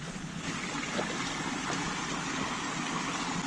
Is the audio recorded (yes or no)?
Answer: yes